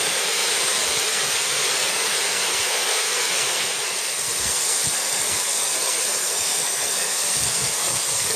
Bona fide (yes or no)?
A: no